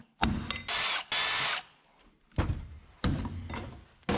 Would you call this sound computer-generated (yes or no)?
no